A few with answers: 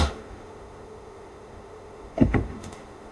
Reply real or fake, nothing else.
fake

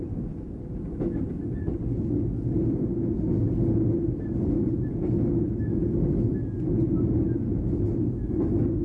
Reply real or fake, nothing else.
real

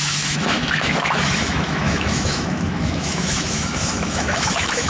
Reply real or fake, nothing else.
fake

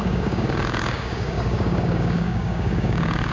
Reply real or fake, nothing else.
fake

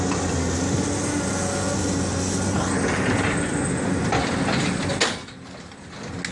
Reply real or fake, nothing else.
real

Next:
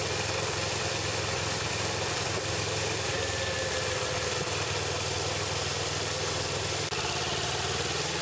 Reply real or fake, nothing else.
real